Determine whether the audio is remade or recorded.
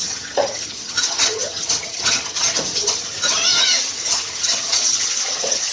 remade